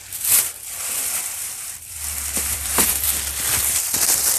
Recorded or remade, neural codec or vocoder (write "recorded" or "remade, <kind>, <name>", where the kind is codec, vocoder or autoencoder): remade, vocoder, BigVGAN v2